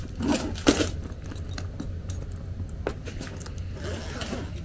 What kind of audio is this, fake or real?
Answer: real